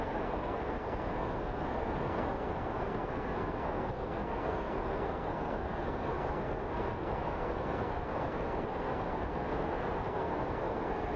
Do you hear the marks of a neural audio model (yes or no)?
yes